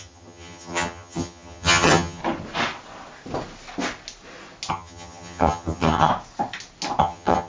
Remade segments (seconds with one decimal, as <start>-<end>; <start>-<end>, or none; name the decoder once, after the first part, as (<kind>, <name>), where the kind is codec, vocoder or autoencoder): 0.0-2.2 (vocoder, HiFi-GAN); 4.7-6.1; 7.0-7.5